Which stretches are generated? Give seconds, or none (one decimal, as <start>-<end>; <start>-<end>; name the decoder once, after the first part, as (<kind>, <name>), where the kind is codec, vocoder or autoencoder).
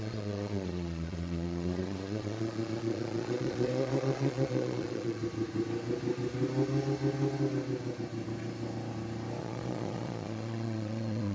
0.0-5.2 (vocoder, Vocos); 9.4-11.3